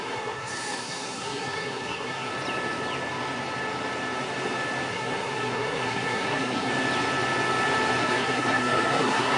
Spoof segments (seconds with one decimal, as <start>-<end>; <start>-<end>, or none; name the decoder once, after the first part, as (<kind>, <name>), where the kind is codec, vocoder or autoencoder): 0.0-2.3 (codec, SNAC); 4.9-6.7; 8.0-9.4